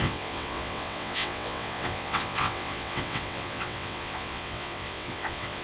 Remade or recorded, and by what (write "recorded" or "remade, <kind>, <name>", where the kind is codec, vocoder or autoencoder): remade, vocoder, WaveNeXt